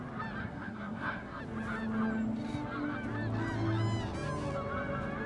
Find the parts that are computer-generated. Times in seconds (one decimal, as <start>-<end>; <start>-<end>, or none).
0.4-1.4